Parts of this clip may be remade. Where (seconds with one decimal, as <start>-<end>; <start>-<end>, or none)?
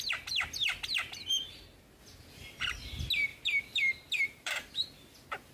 3.3-4.7